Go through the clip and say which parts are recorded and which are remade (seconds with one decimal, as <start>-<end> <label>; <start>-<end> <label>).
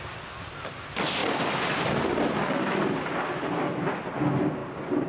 0.0-5.1 recorded